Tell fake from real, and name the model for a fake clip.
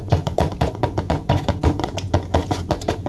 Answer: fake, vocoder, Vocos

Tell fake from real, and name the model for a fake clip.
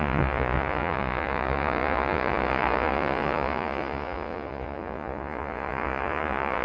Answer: fake, vocoder, Vocos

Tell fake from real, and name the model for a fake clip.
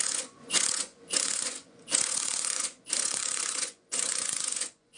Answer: fake, vocoder, Vocos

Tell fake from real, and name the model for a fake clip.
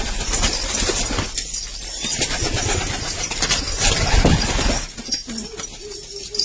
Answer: real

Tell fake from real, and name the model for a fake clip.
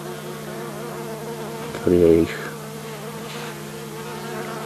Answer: real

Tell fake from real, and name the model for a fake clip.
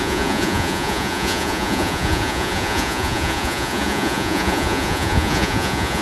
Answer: fake, vocoder, Vocos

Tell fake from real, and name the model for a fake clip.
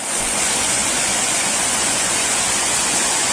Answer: fake, vocoder, Vocos